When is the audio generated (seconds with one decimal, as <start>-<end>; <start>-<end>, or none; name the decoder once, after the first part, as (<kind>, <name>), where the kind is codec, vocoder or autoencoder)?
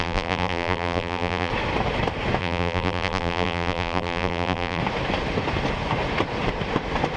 0.0-1.5 (vocoder, BigVGAN v2); 2.4-4.8